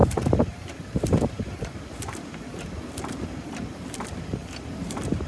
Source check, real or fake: fake